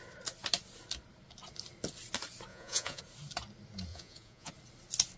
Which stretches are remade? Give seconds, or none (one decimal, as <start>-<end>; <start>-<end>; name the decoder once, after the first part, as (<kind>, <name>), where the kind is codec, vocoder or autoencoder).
2.5-3.0 (vocoder, Vocos); 3.9-4.5